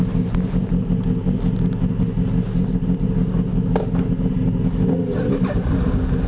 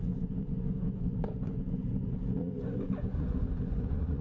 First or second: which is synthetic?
second